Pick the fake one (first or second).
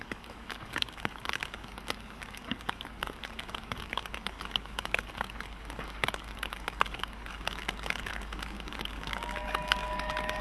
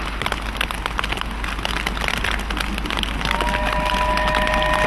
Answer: first